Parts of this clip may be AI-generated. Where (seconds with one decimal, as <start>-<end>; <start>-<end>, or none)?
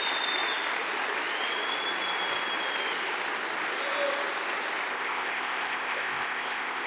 4.9-6.9